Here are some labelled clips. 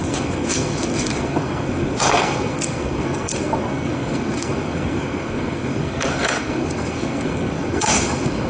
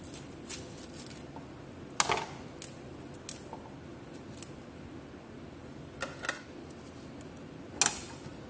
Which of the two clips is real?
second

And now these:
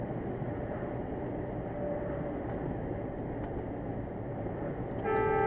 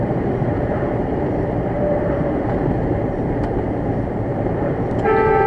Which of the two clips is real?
first